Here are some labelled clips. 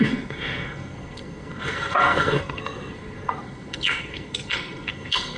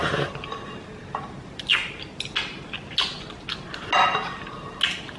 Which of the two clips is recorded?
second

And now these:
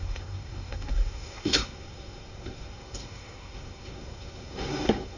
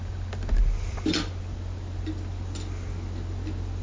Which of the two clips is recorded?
second